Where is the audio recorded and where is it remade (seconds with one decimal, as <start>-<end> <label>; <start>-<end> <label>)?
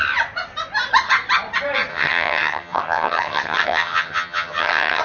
0.0-1.9 recorded; 1.9-5.0 remade